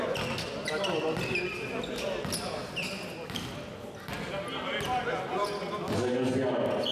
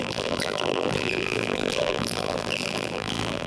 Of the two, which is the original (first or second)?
first